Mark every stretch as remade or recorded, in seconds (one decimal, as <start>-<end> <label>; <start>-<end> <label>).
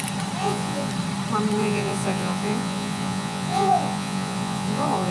0.0-0.4 recorded; 0.4-0.9 remade; 0.9-1.6 recorded; 1.6-5.1 remade